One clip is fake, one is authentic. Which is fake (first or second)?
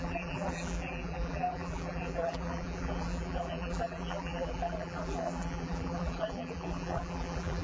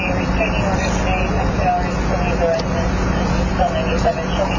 first